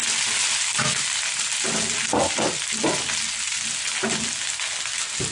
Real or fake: real